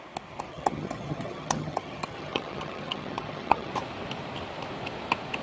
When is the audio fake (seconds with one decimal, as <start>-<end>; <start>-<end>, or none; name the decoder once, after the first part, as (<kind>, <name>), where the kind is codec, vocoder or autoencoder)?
0.5-3.7 (vocoder, HiFi-GAN)